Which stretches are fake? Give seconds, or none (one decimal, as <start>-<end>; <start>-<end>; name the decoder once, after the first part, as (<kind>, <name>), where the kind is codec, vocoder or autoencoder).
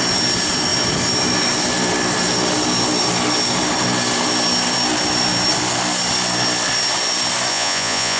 7.5-8.2 (vocoder, Vocos)